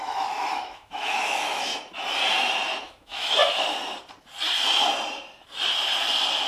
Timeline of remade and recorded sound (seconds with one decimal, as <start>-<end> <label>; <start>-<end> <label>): 0.0-1.7 remade; 1.7-2.8 recorded; 2.8-3.4 remade; 3.4-6.5 recorded